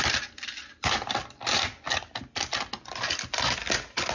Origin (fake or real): real